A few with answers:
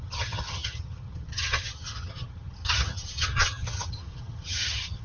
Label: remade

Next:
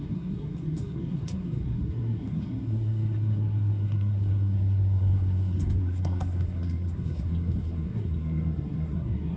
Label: remade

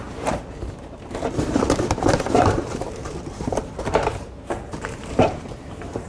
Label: remade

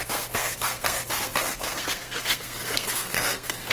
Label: remade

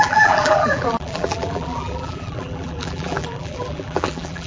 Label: remade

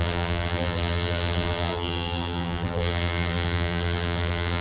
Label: remade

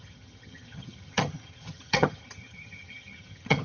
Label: remade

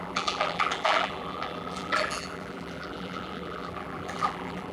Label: remade